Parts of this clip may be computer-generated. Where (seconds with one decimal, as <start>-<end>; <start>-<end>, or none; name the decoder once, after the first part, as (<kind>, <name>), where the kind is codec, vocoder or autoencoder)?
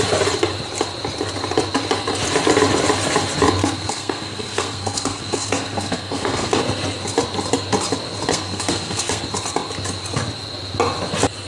3.6-6.6 (codec, SNAC); 8.3-9.2